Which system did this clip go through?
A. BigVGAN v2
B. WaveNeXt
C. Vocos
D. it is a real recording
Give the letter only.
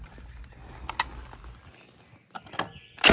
D